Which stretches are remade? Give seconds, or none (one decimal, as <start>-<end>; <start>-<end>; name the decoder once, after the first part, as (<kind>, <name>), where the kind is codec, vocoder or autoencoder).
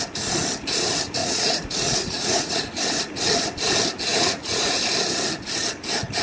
1.2-2.6 (vocoder, Vocos); 4.1-4.8